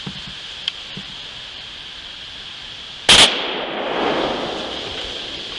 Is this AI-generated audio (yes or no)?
no